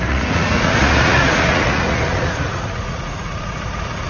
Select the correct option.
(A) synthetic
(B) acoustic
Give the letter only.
A